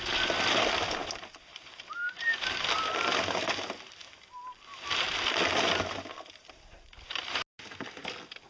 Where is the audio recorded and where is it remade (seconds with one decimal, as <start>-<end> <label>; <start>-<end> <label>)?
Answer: 0.0-8.5 recorded